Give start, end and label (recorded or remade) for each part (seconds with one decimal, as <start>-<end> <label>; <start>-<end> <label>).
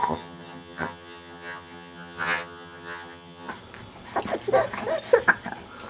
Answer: 0.0-3.5 remade; 3.5-5.9 recorded